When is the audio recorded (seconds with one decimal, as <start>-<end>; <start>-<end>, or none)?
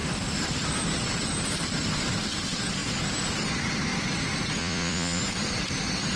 0.0-4.6; 5.2-6.2